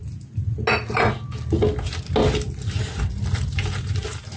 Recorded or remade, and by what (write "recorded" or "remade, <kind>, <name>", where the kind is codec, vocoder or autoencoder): recorded